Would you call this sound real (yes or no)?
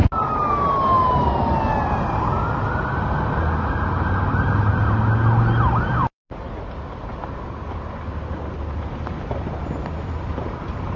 yes